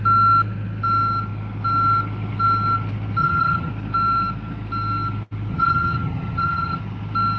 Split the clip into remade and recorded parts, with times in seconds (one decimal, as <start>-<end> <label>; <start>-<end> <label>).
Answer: 0.0-3.2 recorded; 3.2-3.7 remade; 3.7-5.5 recorded; 5.5-6.8 remade; 6.8-7.4 recorded